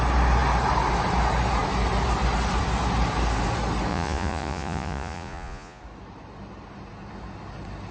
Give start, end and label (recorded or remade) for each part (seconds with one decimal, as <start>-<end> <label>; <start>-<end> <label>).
0.0-3.9 recorded; 3.9-5.8 remade; 5.8-7.9 recorded